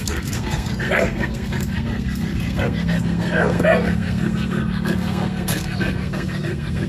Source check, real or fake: fake